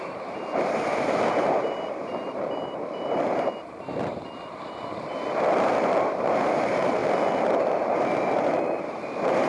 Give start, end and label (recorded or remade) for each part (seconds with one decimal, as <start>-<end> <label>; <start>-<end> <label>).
0.0-7.0 remade; 7.0-7.6 recorded; 7.6-9.5 remade